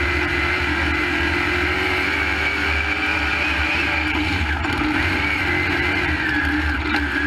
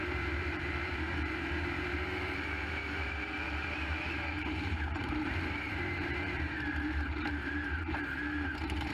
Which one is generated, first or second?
second